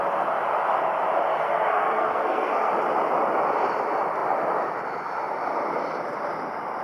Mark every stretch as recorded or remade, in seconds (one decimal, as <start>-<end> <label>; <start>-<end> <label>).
0.0-1.3 recorded; 1.3-2.7 remade; 2.7-6.8 recorded